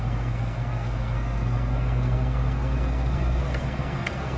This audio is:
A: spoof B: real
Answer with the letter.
A